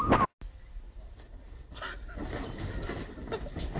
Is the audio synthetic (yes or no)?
no